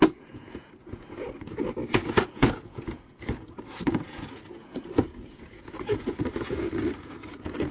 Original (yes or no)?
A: no